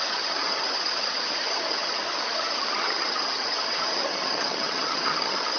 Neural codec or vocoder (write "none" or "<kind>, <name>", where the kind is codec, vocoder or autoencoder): vocoder, HiFi-GAN